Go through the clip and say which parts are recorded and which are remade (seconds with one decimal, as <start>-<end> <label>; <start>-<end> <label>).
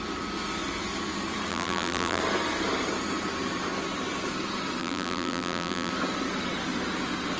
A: 0.0-1.5 recorded; 1.5-2.2 remade; 2.2-4.8 recorded; 4.8-5.9 remade; 5.9-7.4 recorded